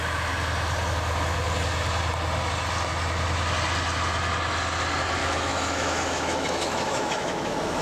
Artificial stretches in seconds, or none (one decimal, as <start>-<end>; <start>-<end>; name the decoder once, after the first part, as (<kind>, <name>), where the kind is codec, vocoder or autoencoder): 5.2-7.8 (autoencoder, DAC-VAE)

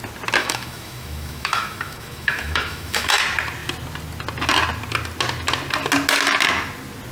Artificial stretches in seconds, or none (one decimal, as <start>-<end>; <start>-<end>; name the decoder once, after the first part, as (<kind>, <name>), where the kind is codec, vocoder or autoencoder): 0.4-3.2 (autoencoder, DAC-VAE)

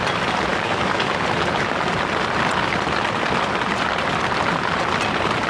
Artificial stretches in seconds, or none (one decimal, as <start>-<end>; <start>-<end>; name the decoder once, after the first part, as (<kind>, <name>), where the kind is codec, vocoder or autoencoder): 0.5-1.1 (codec, DAC)

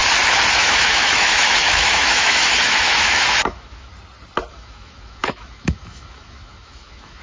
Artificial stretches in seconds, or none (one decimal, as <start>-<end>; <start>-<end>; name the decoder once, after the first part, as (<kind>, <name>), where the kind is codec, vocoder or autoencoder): 0.6-3.9 (autoencoder, DAC-VAE); 4.5-7.2

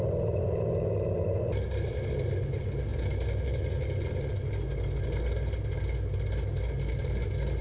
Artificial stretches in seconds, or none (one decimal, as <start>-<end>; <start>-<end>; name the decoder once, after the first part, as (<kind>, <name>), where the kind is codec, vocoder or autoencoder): none

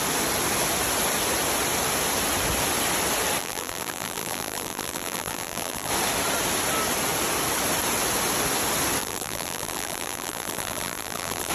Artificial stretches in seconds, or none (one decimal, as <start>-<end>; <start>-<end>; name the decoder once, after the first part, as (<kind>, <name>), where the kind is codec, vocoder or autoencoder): 3.4-5.9 (vocoder, BigVGAN v2); 9.0-11.5

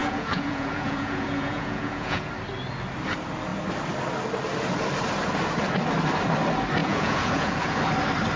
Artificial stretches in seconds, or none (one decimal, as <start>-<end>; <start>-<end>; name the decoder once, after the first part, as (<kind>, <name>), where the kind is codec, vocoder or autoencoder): 0.0-2.3 (vocoder, Vocos); 6.8-7.8